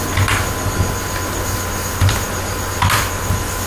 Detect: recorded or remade recorded